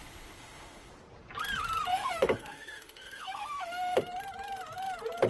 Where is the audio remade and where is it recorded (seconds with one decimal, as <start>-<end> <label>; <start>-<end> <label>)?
0.0-0.9 remade; 0.9-1.9 recorded; 1.9-4.0 remade; 4.0-5.3 recorded